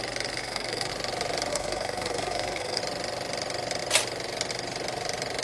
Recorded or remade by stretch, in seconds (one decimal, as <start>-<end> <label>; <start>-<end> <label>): 0.0-0.4 recorded; 0.4-0.9 remade; 0.9-1.5 recorded; 1.5-2.8 remade; 2.8-5.4 recorded